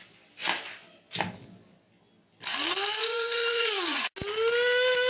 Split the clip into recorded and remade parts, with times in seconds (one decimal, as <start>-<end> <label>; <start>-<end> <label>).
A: 0.0-3.0 recorded; 3.0-4.0 remade; 4.0-5.1 recorded